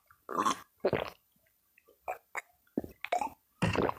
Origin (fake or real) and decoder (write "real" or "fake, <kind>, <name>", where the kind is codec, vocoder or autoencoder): real